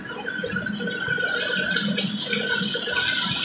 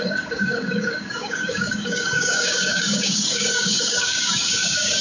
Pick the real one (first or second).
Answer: first